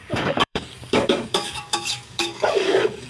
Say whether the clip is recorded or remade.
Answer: remade